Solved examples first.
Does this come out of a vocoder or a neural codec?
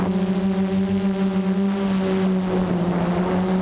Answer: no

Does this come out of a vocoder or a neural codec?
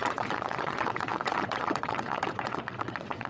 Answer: yes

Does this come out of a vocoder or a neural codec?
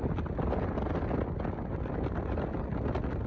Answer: no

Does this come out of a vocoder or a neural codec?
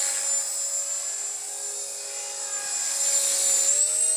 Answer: no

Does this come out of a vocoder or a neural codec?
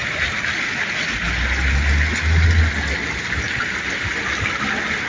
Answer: no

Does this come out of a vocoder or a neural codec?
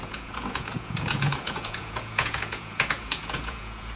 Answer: yes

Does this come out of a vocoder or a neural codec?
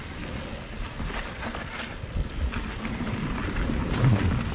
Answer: no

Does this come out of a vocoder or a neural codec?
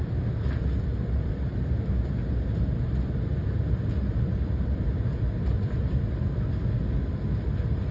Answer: no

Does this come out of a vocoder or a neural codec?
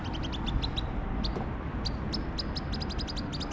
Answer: no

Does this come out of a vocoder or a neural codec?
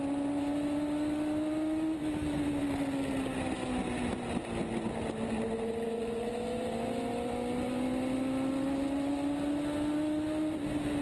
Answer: no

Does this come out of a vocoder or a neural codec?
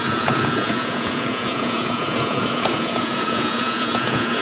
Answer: yes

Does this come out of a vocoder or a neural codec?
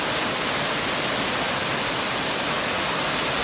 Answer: no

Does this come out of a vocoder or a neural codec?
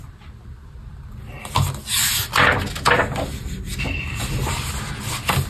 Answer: no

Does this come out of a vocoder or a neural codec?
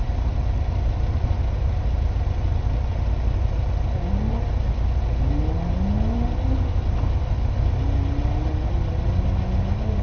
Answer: no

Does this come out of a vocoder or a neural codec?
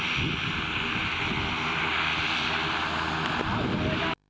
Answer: no